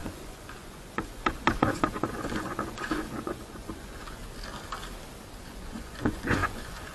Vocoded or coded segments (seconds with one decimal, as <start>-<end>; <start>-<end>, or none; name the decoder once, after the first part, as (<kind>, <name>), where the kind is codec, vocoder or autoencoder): 0.0-4.2 (vocoder, Vocos); 5.4-6.9